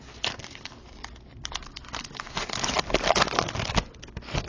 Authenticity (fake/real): real